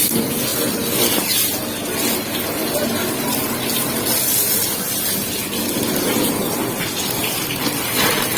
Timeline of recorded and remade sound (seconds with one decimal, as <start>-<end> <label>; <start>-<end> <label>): 0.0-8.4 recorded